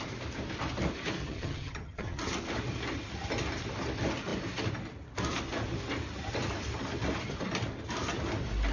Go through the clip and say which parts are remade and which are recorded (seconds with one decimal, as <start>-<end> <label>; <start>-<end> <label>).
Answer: 0.0-1.2 recorded; 1.2-2.2 remade; 2.2-8.7 recorded